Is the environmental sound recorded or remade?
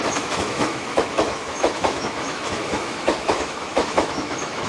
remade